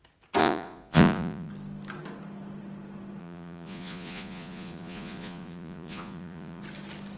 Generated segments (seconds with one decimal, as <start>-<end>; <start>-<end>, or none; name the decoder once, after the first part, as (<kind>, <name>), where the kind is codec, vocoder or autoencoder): 0.4-1.5 (vocoder, Vocos); 3.2-6.6